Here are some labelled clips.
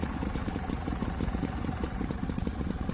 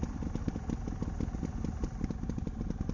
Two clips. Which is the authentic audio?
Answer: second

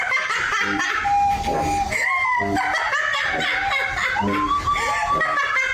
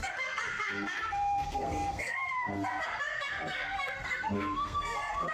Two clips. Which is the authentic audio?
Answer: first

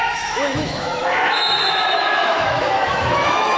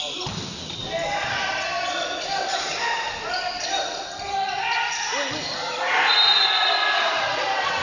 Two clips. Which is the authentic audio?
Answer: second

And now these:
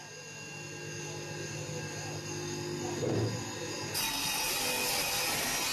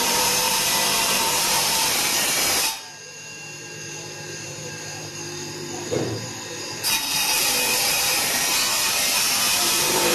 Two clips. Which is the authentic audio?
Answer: first